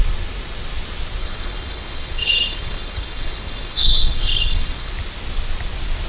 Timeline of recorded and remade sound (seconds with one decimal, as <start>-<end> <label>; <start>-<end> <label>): 0.0-1.2 recorded; 1.2-4.9 remade; 4.9-6.1 recorded